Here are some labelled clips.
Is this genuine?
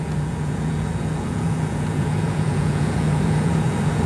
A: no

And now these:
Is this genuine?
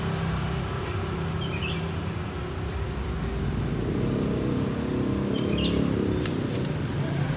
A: yes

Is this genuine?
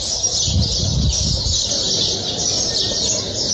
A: yes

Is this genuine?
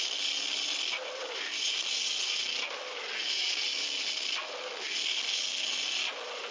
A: yes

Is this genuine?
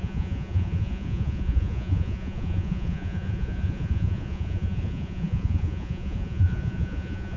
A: no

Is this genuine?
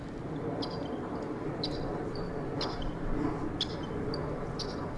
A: yes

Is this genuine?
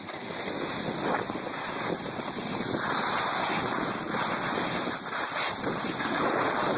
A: yes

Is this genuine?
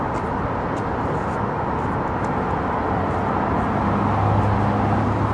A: yes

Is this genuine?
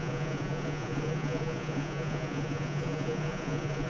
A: no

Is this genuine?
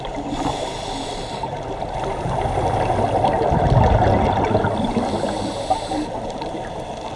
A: yes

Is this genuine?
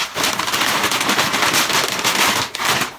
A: yes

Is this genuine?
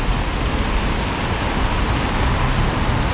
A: yes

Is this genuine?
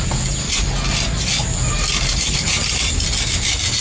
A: yes